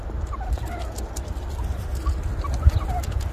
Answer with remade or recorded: recorded